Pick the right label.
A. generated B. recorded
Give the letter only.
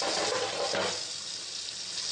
B